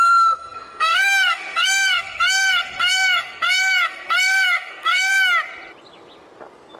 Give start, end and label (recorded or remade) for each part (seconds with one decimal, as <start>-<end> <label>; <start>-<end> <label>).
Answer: 0.0-5.1 remade; 5.1-6.8 recorded